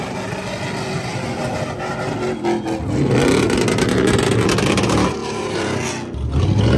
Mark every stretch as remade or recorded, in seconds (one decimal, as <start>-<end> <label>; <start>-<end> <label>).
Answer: 0.0-5.2 recorded; 5.2-5.9 remade; 5.9-6.8 recorded